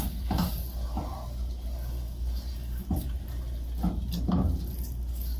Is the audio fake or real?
real